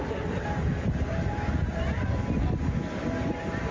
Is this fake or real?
real